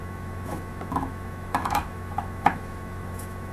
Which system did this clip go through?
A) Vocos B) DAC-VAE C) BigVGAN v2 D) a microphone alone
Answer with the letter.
B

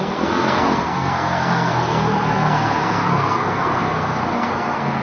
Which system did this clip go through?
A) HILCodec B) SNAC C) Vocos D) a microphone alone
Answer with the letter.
B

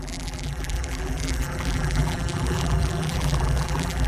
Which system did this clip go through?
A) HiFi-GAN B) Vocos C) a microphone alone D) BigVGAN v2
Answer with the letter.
D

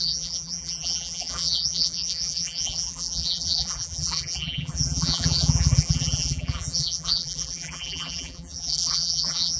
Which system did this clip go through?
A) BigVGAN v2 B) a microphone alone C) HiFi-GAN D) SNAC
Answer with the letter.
A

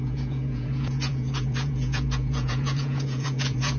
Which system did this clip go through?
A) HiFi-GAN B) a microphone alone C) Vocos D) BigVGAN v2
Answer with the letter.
C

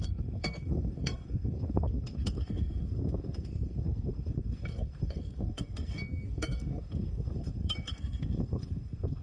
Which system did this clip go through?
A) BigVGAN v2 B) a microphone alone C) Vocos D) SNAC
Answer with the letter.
D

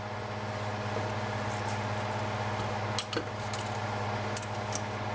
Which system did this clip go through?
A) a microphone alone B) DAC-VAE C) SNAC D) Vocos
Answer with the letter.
A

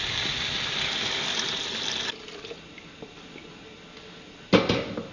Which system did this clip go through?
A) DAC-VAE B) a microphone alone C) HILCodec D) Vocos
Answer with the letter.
B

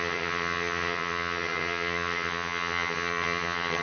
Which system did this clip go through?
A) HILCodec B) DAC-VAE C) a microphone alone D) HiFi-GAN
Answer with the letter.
D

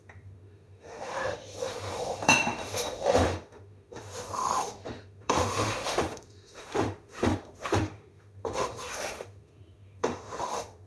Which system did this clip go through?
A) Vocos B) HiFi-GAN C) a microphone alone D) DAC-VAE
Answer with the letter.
D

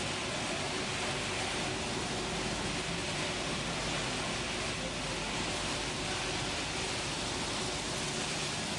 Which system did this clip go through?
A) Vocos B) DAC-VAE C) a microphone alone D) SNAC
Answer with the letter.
C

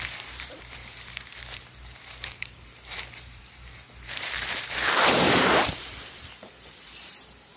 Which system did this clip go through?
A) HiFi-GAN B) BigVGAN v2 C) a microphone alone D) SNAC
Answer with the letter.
B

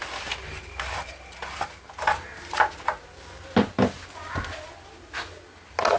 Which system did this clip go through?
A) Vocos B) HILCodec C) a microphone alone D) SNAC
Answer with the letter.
C